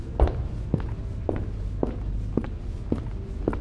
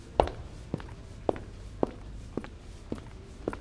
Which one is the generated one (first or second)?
second